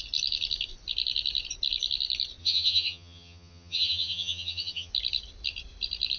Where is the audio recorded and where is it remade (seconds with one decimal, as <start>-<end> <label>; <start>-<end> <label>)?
0.0-2.4 recorded; 2.4-4.9 remade; 4.9-6.2 recorded